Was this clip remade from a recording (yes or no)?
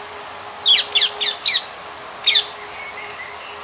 no